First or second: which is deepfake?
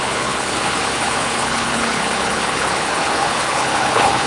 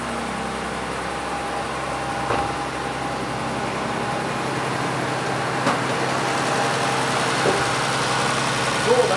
first